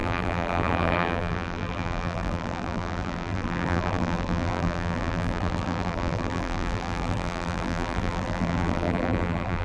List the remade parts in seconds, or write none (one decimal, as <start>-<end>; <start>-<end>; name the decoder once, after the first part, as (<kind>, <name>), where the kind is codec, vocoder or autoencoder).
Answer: 0.0-9.6 (vocoder, BigVGAN v2)